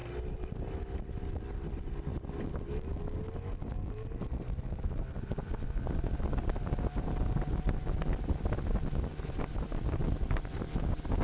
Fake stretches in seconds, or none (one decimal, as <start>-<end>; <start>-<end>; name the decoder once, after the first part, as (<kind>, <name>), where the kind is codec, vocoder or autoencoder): none